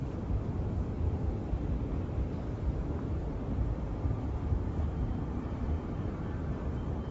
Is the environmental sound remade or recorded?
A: remade